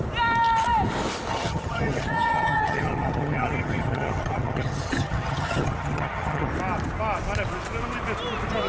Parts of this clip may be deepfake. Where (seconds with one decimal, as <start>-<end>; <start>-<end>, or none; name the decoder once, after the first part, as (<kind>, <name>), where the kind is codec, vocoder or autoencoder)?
1.3-6.5 (vocoder, HiFi-GAN)